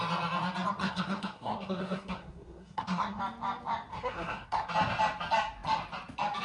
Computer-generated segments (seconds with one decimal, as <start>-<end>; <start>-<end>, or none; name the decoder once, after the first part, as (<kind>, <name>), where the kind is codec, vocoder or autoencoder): 0.8-3.2 (codec, SNAC); 3.9-4.7